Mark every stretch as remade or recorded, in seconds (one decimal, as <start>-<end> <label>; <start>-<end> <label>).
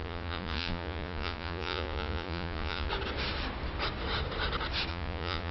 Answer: 0.0-2.9 remade; 2.9-4.9 recorded; 4.9-5.5 remade